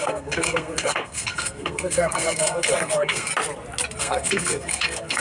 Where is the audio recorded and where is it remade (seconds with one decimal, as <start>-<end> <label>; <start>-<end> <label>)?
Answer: 0.0-3.3 remade; 3.3-4.0 recorded; 4.0-5.2 remade